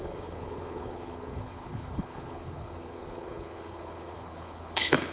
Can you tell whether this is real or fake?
fake